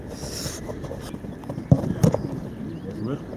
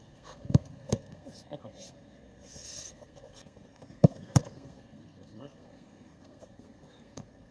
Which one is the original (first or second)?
first